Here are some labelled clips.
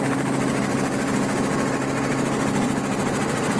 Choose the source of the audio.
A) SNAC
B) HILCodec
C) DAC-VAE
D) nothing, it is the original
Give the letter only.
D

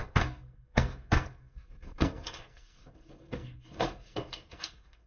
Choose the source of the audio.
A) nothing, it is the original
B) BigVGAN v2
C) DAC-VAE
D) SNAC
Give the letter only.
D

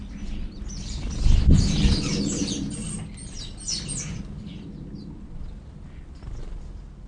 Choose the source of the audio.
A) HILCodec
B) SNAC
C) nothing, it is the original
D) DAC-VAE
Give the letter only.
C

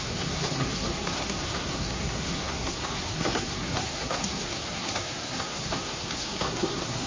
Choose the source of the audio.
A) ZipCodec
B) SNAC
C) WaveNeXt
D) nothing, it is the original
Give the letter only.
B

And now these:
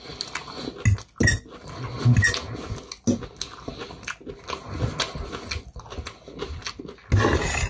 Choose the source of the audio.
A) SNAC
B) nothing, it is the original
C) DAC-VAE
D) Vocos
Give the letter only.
B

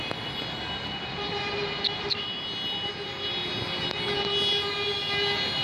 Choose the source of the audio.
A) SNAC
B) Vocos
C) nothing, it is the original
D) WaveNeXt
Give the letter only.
C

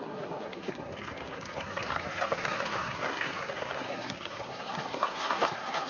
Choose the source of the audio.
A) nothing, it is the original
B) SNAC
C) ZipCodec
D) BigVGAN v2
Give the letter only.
B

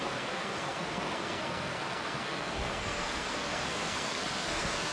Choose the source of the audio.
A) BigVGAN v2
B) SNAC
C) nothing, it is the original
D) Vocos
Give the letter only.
B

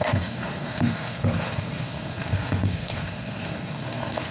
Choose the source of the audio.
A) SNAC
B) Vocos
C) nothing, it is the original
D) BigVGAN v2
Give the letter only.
A